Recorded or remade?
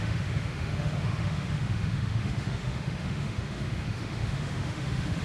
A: remade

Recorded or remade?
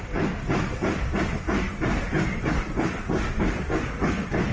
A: recorded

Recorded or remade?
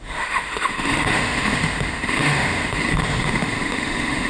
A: remade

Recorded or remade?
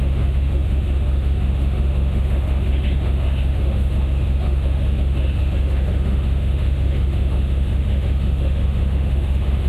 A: remade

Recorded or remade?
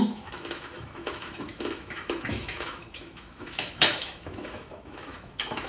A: remade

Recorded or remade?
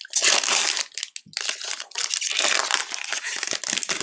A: recorded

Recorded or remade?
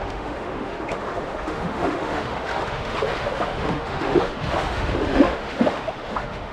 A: remade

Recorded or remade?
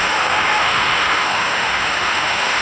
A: remade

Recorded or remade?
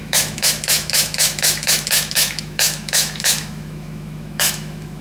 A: remade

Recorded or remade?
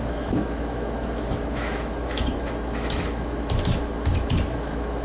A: remade